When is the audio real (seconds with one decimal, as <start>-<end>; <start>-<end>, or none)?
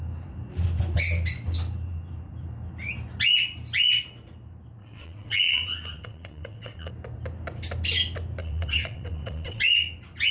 0.0-4.8; 6.9-8.4; 9.6-10.3